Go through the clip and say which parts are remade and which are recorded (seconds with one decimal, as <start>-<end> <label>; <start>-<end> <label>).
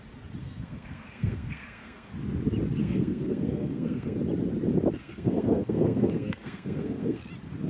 0.0-0.4 recorded; 0.4-2.1 remade; 2.1-2.8 recorded; 2.8-4.2 remade; 4.2-5.0 recorded; 5.0-7.2 remade; 7.2-7.7 recorded